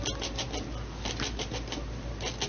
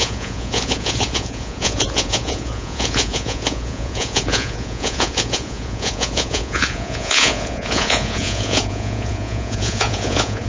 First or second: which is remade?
second